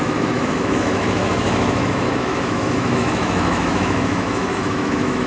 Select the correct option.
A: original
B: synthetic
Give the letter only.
B